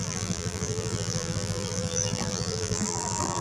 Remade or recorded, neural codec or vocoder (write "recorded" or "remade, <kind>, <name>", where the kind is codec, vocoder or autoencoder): remade, vocoder, BigVGAN v2